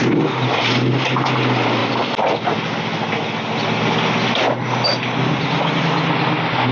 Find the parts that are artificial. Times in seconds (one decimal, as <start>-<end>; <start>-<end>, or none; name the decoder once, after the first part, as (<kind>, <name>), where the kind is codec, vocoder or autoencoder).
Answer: none